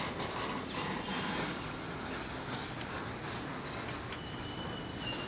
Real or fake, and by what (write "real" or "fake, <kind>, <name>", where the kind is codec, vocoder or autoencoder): real